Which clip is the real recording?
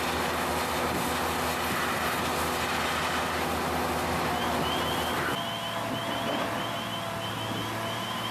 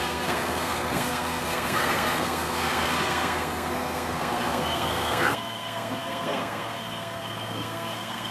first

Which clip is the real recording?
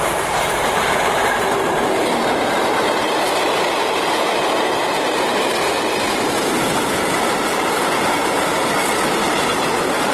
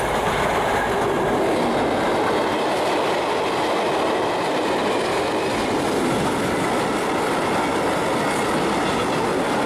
second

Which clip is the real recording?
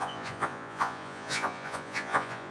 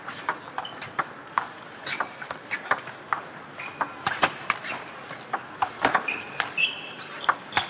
second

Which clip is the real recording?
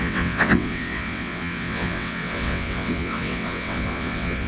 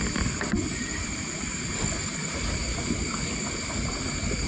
second